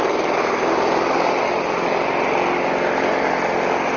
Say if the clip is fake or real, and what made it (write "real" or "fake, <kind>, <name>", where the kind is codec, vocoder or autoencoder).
real